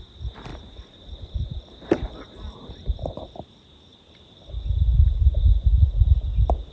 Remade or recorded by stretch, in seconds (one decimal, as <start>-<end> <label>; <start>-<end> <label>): 0.0-0.5 recorded; 0.5-4.5 remade; 4.5-6.7 recorded